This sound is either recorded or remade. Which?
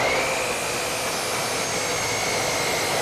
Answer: recorded